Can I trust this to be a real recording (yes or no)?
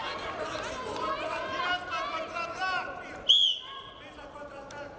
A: no